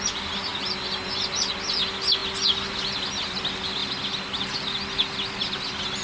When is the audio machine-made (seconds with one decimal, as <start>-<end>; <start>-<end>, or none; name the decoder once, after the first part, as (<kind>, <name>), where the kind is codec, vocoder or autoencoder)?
3.8-4.4 (vocoder, BigVGAN v2)